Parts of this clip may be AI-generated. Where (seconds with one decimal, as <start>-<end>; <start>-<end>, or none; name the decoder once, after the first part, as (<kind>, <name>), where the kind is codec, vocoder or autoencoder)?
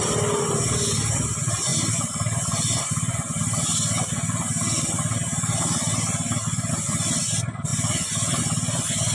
none